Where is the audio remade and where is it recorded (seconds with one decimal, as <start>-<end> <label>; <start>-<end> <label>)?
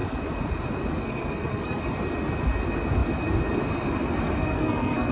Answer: 0.0-1.0 recorded; 1.0-1.8 remade; 1.8-4.4 recorded; 4.4-5.1 remade